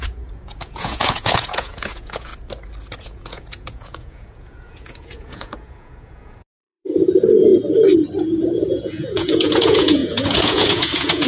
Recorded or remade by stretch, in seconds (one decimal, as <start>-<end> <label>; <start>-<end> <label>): 0.0-2.3 remade; 2.3-3.0 recorded; 3.0-7.5 remade; 7.5-8.2 recorded; 8.2-11.3 remade